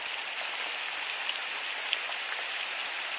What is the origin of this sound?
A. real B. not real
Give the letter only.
A